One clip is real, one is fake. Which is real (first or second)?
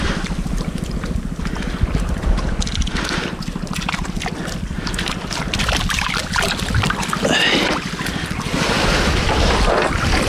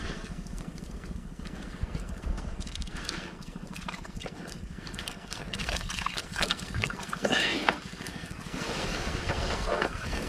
first